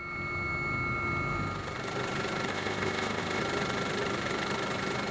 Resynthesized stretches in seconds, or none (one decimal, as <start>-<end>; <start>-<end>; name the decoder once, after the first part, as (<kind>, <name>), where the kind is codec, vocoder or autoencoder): 2.5-3.4 (codec, ZipCodec)